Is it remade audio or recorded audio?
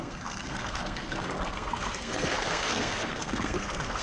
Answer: remade